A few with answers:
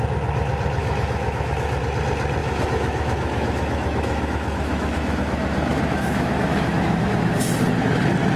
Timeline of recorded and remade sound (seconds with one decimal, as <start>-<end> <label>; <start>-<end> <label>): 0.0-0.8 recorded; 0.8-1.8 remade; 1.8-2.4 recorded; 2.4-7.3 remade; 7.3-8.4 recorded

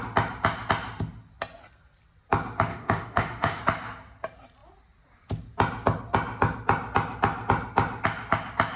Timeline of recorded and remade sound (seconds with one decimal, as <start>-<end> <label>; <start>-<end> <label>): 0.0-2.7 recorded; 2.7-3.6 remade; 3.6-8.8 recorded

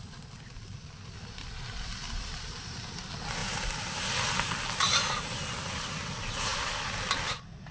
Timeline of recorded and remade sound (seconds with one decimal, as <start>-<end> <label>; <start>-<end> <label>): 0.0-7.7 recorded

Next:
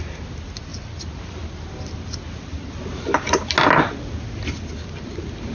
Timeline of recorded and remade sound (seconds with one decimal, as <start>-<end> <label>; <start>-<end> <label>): 0.0-5.5 recorded

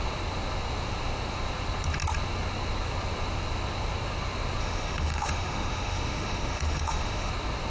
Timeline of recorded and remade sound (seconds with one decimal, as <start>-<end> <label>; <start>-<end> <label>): 0.0-4.6 recorded; 4.6-7.3 remade; 7.3-7.7 recorded

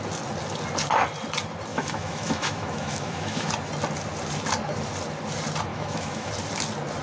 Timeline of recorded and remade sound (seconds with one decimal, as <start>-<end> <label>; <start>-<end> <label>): 0.0-1.7 recorded; 1.7-3.5 remade; 3.5-5.7 recorded; 5.7-6.3 remade; 6.3-7.0 recorded

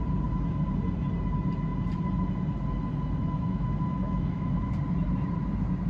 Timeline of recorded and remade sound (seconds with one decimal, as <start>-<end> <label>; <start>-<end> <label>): 0.0-3.2 recorded; 3.2-4.7 remade; 4.7-5.9 recorded